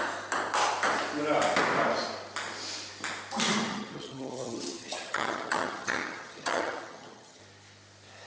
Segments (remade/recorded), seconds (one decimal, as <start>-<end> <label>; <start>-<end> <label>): 0.0-3.7 recorded; 3.7-7.4 remade; 7.4-8.3 recorded